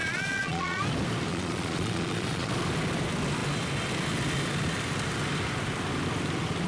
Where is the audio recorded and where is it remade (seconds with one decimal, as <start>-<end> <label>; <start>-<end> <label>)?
0.0-0.8 remade; 0.8-1.3 recorded; 1.3-2.5 remade; 2.5-6.7 recorded